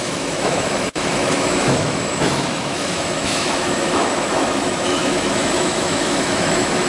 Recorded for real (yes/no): no